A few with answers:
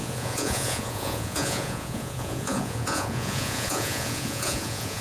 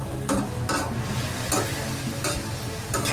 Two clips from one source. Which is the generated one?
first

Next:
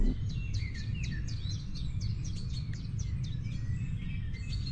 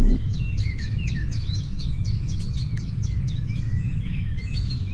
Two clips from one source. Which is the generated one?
second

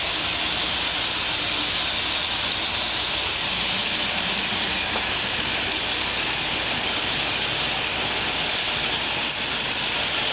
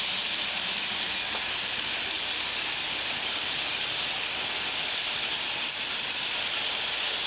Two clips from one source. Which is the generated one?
second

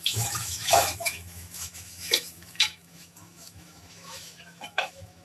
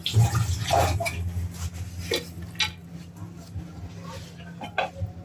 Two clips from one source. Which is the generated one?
first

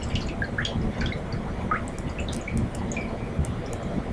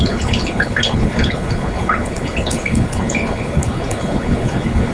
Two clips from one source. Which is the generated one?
second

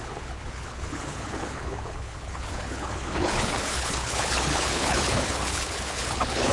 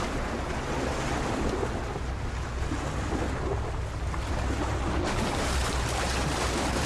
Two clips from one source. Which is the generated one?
first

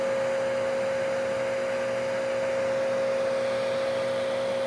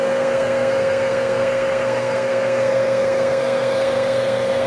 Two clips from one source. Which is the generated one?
second